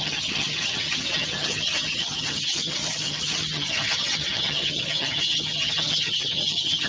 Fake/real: fake